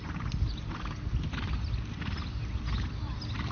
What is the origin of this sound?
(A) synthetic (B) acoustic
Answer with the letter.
B